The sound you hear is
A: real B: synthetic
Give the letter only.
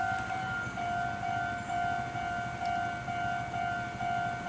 A